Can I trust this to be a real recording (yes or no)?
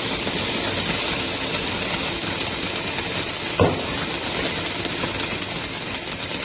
yes